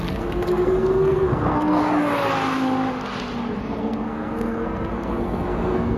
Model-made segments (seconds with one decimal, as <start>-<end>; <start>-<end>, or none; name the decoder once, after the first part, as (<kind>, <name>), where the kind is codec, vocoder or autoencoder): 0.0-1.8 (codec, SNAC); 3.6-6.0